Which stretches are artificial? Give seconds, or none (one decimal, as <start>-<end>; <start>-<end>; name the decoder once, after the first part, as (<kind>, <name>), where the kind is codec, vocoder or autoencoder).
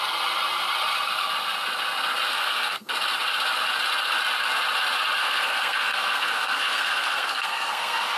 2.3-2.9 (codec, SNAC); 5.2-8.2